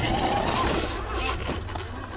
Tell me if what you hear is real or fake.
real